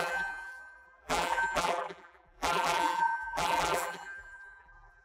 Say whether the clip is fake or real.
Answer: fake